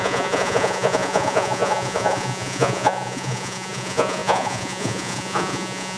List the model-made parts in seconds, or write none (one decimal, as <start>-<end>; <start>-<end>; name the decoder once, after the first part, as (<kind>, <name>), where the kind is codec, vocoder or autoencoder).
0.0-6.0 (vocoder, Vocos)